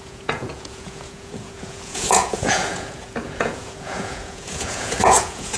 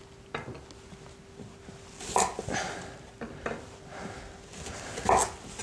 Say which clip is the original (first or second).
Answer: second